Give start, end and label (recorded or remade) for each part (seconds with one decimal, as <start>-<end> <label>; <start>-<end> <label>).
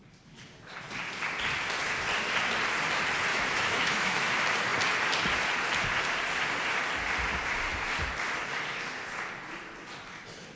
0.0-3.3 recorded; 3.3-4.3 remade; 4.3-10.6 recorded